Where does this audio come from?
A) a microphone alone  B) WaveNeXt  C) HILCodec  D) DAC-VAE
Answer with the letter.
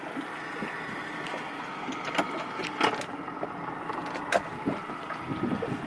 A